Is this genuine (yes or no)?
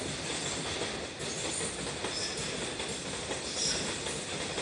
yes